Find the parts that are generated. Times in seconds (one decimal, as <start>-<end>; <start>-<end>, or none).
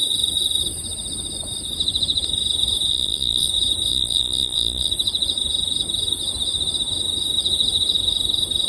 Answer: 2.9-3.5; 3.9-4.9